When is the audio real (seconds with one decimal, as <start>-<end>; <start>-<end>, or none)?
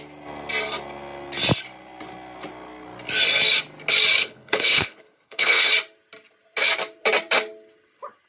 0.0-4.2; 5.7-8.3